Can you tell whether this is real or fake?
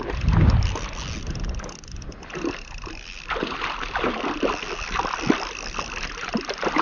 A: real